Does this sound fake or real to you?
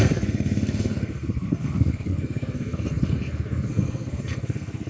fake